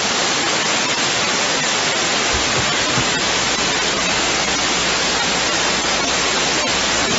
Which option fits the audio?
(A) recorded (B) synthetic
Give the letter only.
A